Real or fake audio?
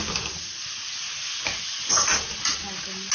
real